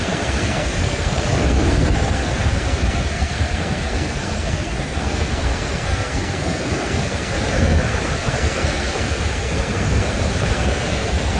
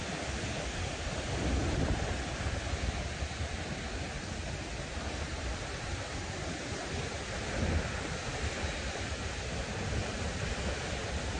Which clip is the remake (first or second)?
first